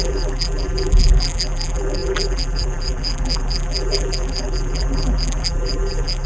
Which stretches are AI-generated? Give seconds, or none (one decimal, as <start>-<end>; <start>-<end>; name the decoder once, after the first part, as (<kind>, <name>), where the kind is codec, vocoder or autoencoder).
0.0-6.3 (vocoder, BigVGAN v2)